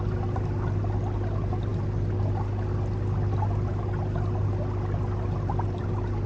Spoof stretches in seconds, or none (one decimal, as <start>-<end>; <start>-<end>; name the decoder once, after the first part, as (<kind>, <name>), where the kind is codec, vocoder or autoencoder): none